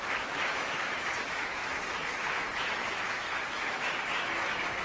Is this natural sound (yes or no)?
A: no